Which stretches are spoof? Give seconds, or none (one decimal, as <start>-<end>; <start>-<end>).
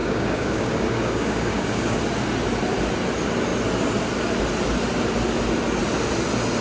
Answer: 0.0-2.0